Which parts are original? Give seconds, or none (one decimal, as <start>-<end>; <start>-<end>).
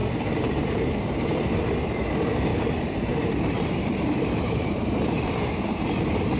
1.4-2.5; 5.3-6.4